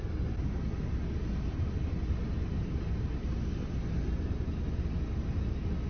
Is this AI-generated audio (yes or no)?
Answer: no